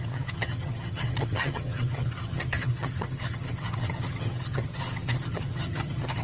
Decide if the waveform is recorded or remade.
remade